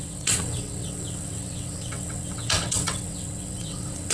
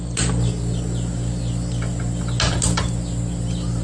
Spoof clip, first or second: first